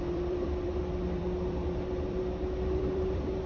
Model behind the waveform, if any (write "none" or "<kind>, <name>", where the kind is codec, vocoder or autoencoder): vocoder, BigVGAN v2